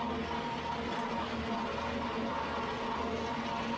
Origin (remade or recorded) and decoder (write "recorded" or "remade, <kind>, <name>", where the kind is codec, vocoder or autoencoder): recorded